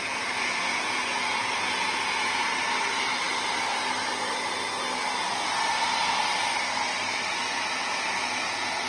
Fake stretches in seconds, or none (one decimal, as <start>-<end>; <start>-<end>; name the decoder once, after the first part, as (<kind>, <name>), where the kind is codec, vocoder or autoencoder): 0.0-2.6 (vocoder, Vocos); 7.3-8.9